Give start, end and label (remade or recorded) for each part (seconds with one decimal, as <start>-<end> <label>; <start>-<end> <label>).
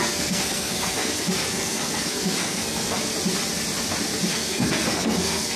0.0-3.1 remade; 3.1-4.3 recorded; 4.3-5.6 remade